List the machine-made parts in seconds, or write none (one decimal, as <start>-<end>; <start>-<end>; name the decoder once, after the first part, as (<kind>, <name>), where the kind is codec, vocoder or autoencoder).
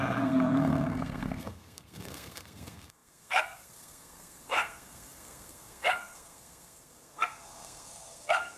0.0-8.6 (codec, SNAC)